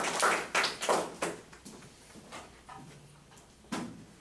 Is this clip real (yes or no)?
yes